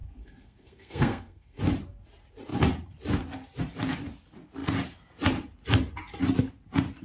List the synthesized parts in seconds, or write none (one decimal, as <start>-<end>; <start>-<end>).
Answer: 0.0-1.6